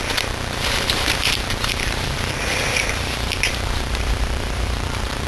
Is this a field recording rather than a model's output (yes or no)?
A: no